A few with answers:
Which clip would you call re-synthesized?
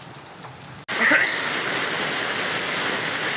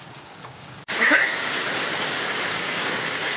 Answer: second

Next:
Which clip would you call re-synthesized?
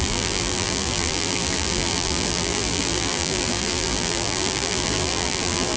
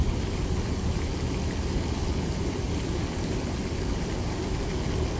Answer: first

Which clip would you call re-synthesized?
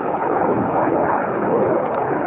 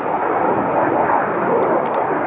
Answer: first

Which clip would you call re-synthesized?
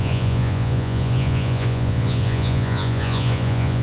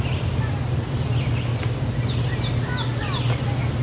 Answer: first